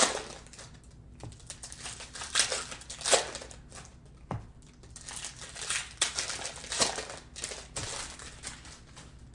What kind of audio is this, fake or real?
real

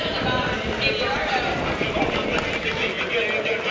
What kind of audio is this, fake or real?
real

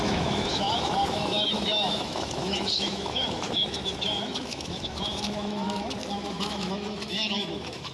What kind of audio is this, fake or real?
fake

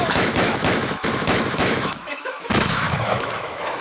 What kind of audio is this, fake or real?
fake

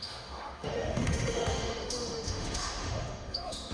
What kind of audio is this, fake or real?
fake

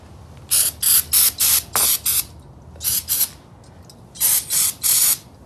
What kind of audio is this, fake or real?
real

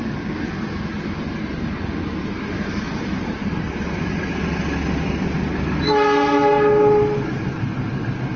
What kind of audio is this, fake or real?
real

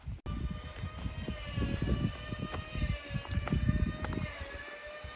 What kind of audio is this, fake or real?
real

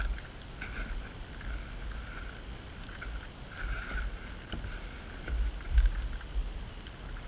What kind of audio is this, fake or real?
real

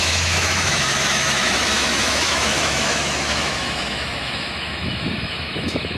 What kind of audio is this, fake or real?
fake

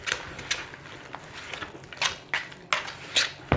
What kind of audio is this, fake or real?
real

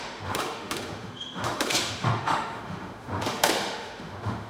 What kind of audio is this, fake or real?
fake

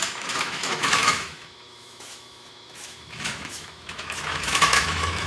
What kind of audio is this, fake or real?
fake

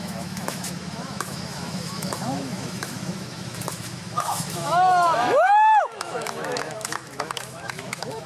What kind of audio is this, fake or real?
fake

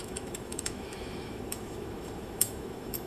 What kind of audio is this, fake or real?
fake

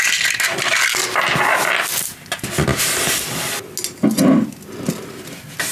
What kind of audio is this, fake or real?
real